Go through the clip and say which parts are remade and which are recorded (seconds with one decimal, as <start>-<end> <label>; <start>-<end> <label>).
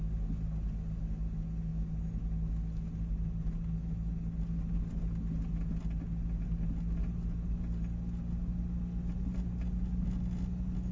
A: 0.0-10.9 recorded